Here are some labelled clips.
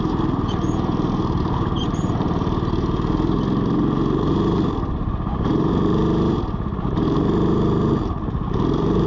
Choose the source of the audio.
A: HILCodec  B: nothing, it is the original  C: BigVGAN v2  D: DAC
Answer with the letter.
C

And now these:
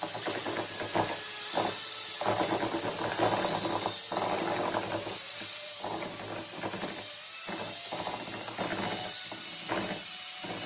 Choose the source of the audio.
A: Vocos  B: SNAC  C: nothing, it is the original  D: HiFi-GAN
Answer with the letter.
C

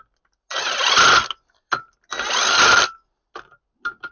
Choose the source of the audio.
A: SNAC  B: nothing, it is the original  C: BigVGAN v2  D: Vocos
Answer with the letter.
B